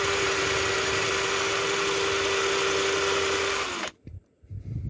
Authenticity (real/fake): real